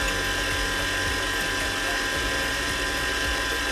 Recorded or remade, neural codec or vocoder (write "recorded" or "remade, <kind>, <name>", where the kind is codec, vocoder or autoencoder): recorded